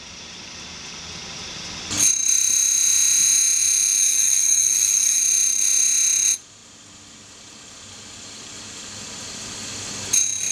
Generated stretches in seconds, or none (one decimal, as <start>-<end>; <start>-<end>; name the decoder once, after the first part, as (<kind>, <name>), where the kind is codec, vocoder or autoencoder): 4.0-5.2 (codec, SNAC)